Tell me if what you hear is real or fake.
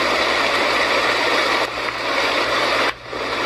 real